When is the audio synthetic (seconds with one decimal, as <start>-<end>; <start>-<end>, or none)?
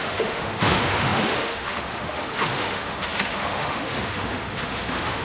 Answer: 0.0-5.2